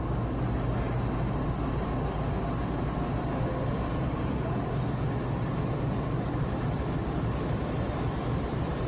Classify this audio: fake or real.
real